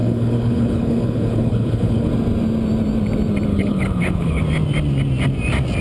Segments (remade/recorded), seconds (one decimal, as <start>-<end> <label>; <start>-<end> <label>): 0.0-2.1 remade; 2.1-3.5 recorded; 3.5-4.4 remade; 4.4-5.8 recorded